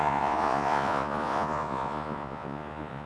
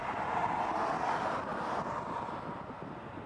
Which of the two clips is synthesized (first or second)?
first